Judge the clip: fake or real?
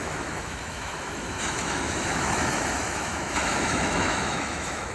fake